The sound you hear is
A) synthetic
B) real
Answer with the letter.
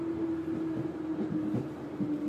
B